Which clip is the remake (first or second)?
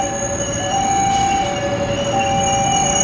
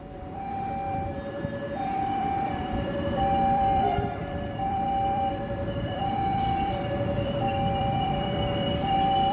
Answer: second